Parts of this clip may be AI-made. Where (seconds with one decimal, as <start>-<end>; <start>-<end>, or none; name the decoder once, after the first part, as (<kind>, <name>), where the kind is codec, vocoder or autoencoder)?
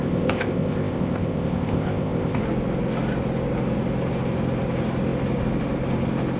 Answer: 0.0-2.4 (codec, ZipCodec)